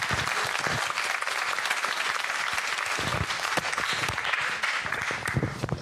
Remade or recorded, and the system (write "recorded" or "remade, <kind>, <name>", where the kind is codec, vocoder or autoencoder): recorded